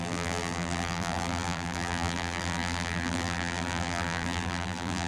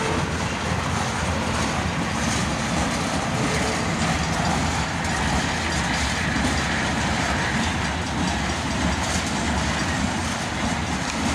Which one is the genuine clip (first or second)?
second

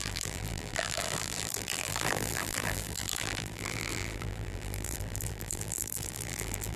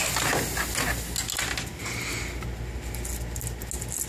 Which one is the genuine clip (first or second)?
second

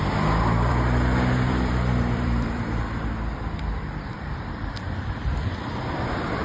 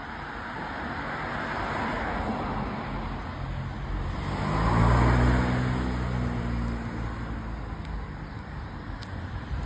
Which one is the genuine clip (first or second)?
second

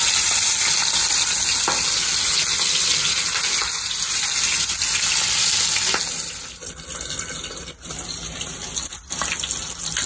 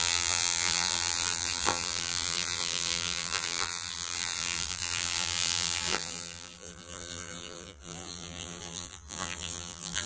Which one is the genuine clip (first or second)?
first